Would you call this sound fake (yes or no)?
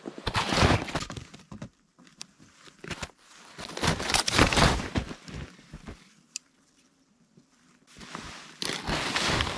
yes